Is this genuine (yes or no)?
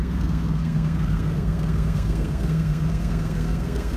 no